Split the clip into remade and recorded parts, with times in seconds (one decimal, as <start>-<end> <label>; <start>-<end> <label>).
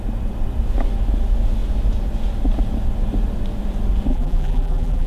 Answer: 0.0-4.1 recorded; 4.1-5.1 remade